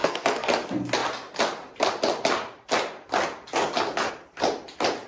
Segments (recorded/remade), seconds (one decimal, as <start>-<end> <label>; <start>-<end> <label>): 0.0-0.5 remade; 0.5-5.1 recorded